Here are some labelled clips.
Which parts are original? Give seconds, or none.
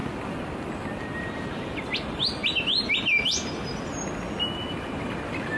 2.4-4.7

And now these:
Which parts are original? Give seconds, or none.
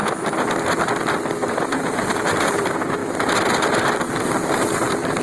0.0-1.3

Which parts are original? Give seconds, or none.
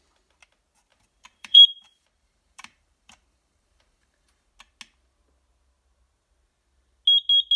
0.0-0.9; 4.5-7.6